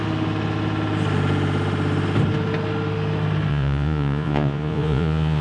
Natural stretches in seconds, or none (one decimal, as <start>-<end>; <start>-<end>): 0.0-3.5